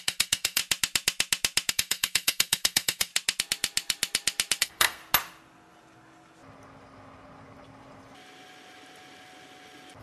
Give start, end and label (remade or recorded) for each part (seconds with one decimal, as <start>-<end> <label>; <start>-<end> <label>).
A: 0.0-0.6 remade; 0.6-1.7 recorded; 1.7-3.1 remade; 3.1-4.6 recorded; 4.6-5.0 remade; 5.0-10.0 recorded